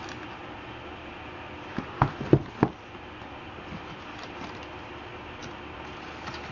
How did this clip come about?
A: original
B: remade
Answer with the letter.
A